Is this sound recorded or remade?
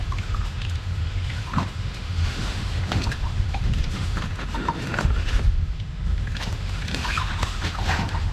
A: remade